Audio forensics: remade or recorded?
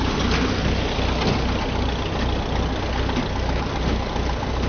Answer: recorded